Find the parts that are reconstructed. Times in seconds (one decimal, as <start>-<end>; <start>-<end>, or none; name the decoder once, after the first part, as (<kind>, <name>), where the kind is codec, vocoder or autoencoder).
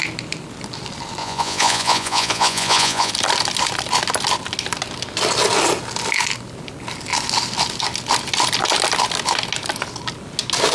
1.2-3.1 (vocoder, Vocos)